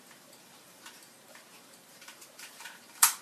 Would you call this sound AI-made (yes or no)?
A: yes